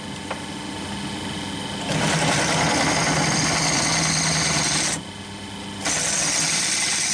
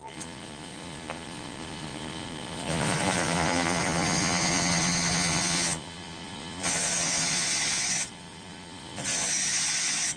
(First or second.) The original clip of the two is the first